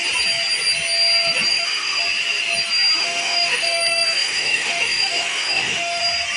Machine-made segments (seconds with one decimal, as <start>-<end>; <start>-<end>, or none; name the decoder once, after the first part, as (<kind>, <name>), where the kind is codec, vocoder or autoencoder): 1.5-2.0 (autoencoder, DAC-VAE); 3.0-6.0